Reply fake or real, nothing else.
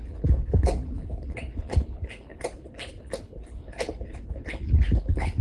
fake